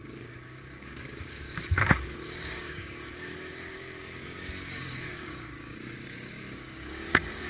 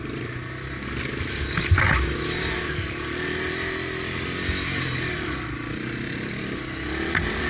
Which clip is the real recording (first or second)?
second